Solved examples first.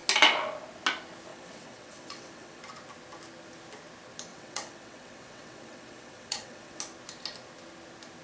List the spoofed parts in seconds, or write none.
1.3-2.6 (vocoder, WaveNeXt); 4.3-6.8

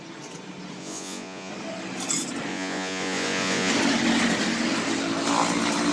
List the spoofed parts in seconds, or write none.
0.8-1.5 (vocoder, Vocos); 2.5-3.7